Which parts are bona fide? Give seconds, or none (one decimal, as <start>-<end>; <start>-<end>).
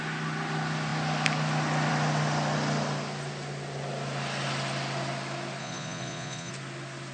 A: 0.0-5.6; 6.5-7.1